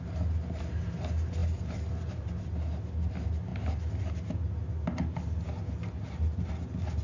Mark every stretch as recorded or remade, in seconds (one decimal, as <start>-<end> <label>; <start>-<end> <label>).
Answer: 0.0-7.0 recorded